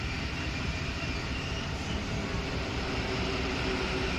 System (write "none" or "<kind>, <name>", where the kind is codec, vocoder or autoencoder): none